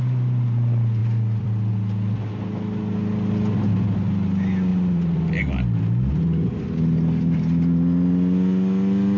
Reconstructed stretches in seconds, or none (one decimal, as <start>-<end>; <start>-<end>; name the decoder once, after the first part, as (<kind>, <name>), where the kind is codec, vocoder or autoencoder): 1.0-1.7 (vocoder, BigVGAN v2); 4.7-5.4